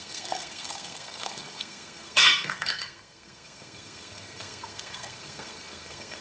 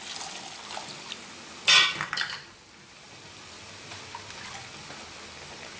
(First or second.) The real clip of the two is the second